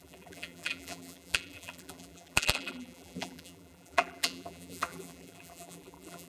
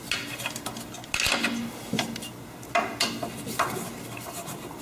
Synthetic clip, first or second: first